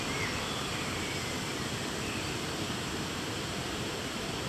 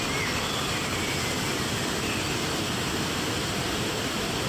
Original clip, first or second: second